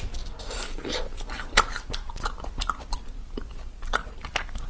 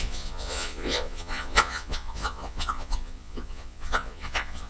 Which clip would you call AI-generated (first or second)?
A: second